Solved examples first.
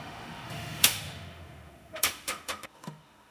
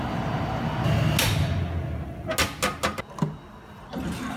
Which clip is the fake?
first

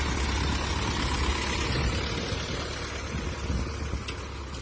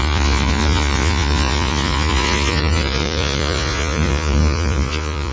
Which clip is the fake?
second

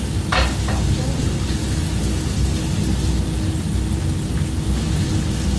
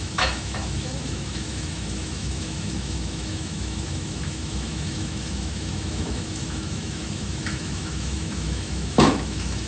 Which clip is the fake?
second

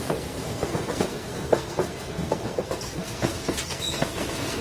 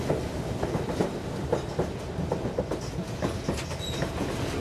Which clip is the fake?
first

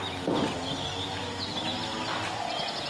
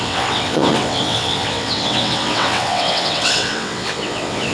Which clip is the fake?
second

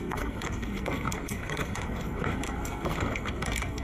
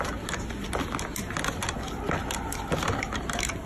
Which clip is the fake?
first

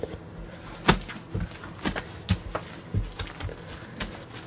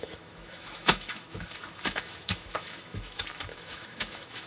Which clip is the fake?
second